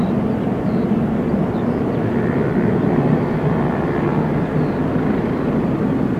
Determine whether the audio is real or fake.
real